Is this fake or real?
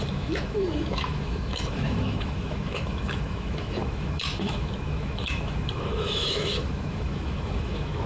fake